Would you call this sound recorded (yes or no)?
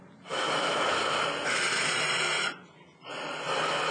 yes